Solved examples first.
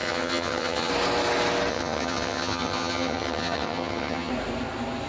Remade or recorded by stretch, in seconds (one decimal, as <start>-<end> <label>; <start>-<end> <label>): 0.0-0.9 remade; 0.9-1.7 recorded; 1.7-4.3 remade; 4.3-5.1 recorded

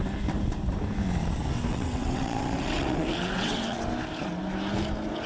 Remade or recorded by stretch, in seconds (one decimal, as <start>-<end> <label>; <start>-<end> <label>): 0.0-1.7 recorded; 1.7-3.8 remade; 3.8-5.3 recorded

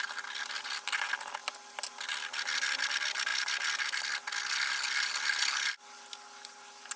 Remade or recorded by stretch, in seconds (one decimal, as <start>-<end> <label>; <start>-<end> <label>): 0.0-7.0 recorded

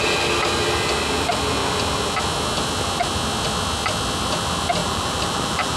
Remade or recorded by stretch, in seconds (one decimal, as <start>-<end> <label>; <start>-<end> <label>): 0.0-4.8 recorded; 4.8-5.8 remade

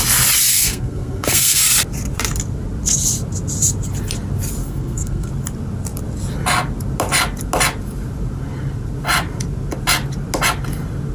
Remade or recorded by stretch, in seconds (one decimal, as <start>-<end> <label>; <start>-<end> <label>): 0.0-0.5 recorded; 0.5-1.6 remade; 1.6-4.6 recorded; 4.6-5.3 remade; 5.3-11.1 recorded